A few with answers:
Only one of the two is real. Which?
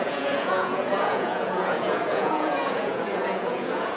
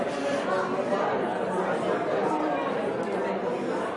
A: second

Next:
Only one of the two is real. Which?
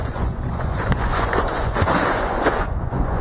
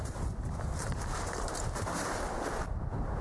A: second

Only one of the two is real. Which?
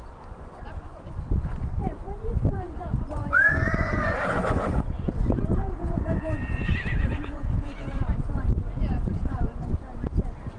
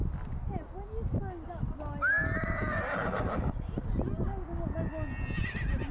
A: second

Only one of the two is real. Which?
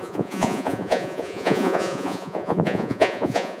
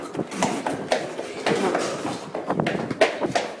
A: second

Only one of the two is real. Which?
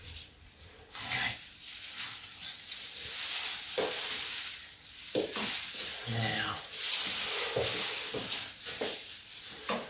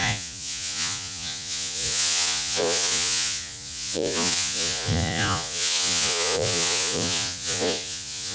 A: first